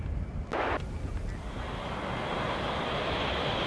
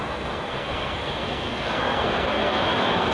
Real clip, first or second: first